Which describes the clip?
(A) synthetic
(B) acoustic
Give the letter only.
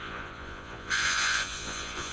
A